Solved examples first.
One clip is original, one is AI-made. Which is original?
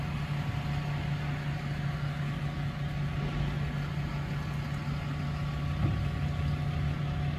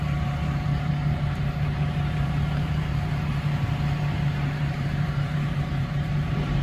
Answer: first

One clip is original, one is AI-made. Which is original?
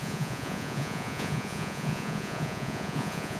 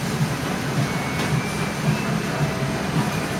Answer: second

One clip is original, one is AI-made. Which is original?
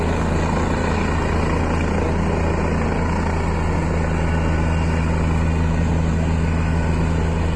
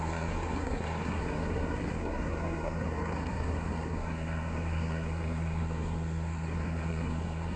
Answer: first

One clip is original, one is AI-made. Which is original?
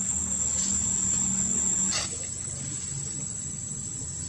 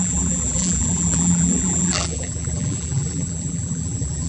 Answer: first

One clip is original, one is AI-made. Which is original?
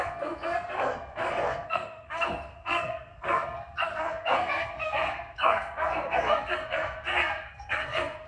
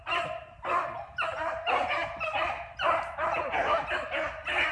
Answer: second